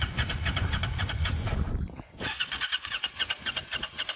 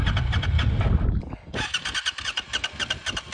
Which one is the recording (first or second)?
second